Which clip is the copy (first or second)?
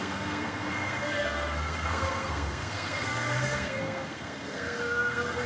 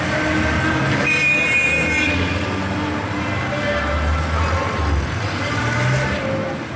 first